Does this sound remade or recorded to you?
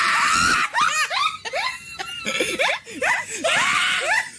recorded